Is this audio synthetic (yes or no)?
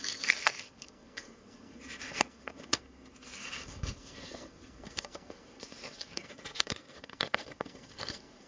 yes